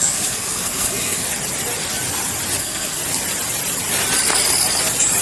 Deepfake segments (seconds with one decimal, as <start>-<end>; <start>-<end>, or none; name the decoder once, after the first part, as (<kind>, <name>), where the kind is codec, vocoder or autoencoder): 0.0-1.2 (codec, SNAC); 2.6-3.0